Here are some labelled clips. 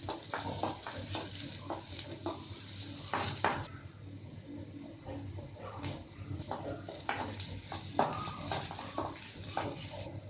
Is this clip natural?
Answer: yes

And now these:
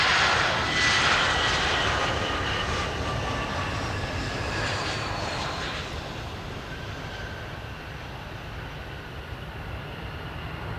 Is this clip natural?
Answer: yes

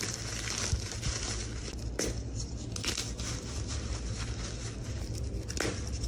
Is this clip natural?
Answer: yes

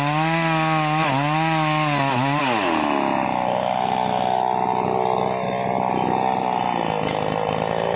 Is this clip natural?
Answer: yes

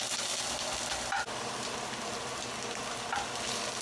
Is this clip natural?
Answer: yes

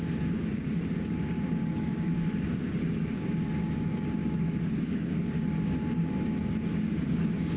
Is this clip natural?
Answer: no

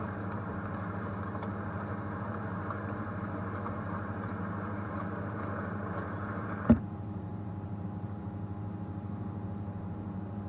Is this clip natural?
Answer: no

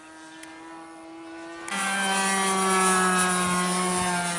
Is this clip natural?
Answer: yes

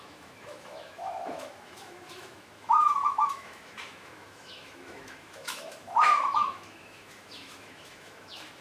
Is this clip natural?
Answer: no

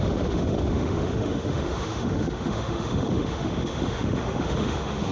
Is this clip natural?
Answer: no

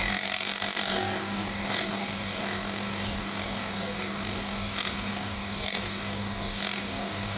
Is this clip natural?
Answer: no